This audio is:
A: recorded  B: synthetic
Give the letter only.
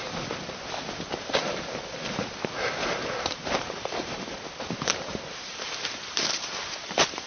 B